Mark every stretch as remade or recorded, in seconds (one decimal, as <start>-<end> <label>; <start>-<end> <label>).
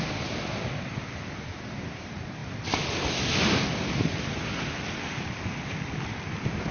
0.0-6.7 recorded